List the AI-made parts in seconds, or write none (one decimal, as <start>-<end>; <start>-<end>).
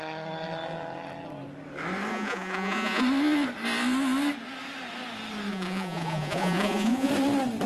2.1-3.0; 5.5-7.1